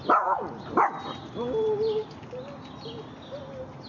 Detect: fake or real real